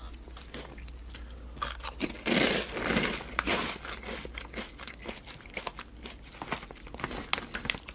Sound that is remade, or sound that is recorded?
recorded